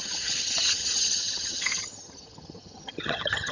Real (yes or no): no